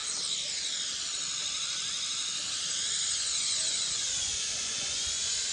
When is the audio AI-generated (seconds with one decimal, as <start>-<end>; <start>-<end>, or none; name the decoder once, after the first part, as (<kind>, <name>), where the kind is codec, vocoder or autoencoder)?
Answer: 3.1-5.5 (vocoder, Vocos)